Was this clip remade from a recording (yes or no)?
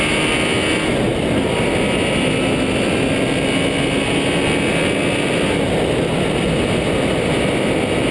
no